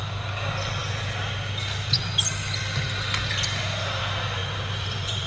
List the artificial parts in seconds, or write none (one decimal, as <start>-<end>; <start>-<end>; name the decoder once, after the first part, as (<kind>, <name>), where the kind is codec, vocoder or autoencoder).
4.4-5.3 (vocoder, BigVGAN v2)